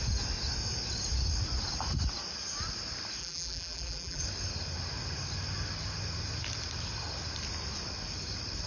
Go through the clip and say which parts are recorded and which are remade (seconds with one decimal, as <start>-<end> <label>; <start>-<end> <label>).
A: 0.0-3.2 recorded; 3.2-4.2 remade; 4.2-8.7 recorded